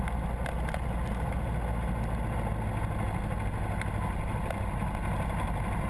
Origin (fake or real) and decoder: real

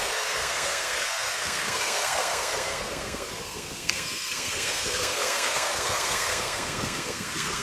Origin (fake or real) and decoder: fake, codec, SNAC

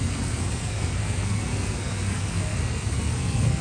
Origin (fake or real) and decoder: fake, codec, SNAC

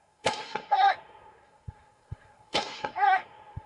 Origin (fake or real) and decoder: fake, codec, SNAC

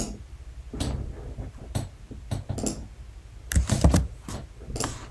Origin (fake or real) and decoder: real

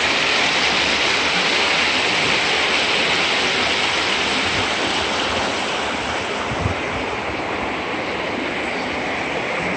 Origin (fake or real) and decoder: real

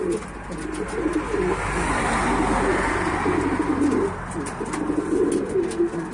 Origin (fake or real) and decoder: real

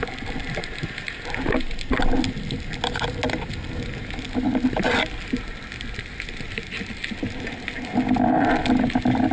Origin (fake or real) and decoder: real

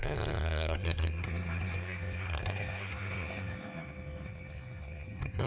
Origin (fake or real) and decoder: fake, codec, SNAC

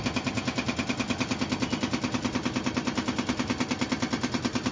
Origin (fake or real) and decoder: real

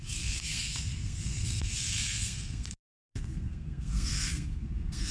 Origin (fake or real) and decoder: fake, codec, SNAC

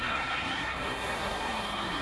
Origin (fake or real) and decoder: fake, codec, SNAC